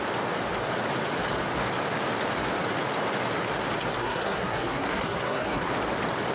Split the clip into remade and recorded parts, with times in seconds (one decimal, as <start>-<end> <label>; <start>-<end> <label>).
0.0-4.0 recorded; 4.0-5.7 remade; 5.7-6.3 recorded

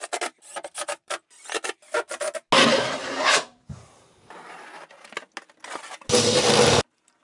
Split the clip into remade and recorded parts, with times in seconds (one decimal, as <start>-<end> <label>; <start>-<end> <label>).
0.0-0.5 recorded; 0.5-1.1 remade; 1.1-2.7 recorded; 2.7-4.8 remade; 4.8-7.2 recorded

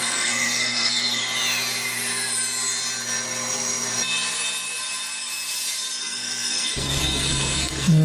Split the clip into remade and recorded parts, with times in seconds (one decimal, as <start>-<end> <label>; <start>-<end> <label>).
0.0-1.2 remade; 1.2-6.0 recorded; 6.0-8.0 remade

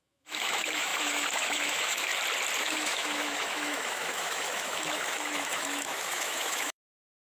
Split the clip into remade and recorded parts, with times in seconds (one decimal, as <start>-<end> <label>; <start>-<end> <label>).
0.0-2.1 remade; 2.1-2.6 recorded; 2.6-7.2 remade

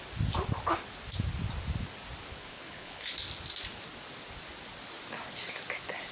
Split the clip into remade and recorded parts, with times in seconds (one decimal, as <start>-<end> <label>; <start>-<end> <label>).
0.0-2.3 recorded; 2.3-3.2 remade; 3.2-6.1 recorded

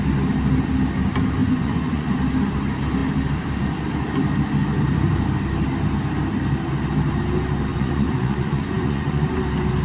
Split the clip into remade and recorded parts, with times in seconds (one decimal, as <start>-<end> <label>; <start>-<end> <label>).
0.0-1.4 recorded; 1.4-2.1 remade; 2.1-7.7 recorded; 7.7-9.4 remade; 9.4-9.8 recorded

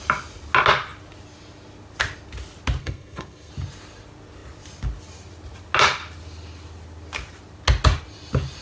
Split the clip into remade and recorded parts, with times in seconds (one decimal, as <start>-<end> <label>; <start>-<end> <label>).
0.0-2.8 recorded; 2.8-3.5 remade; 3.5-8.6 recorded